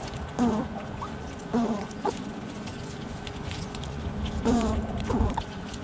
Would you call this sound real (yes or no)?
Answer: no